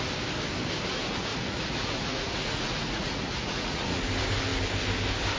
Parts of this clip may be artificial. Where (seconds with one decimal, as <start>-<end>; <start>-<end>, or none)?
1.3-4.0